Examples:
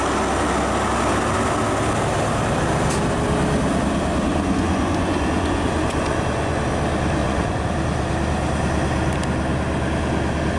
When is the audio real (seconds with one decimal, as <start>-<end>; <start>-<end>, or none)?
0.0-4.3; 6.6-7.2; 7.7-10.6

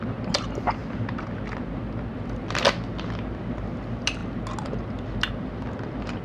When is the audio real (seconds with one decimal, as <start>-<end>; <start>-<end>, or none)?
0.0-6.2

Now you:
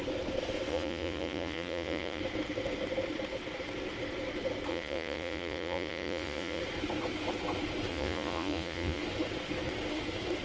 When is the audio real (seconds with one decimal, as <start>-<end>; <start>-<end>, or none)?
0.0-0.7; 2.2-4.7; 6.6-7.9; 9.0-10.4

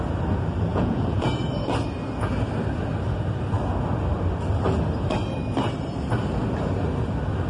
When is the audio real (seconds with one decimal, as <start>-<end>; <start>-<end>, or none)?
0.0-0.7; 1.3-7.5

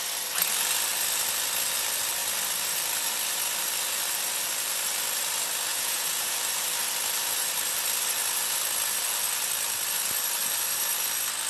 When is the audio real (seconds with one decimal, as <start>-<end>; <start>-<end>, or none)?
0.0-5.7; 6.4-11.5

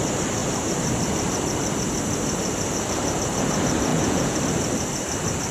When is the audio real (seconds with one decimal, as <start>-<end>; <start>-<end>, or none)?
0.0-3.9; 4.4-5.5

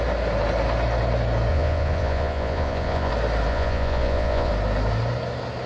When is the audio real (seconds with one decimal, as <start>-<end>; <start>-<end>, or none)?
0.0-1.5; 3.1-3.5; 4.5-5.7